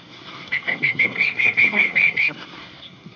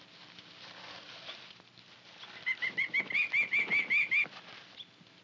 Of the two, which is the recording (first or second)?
second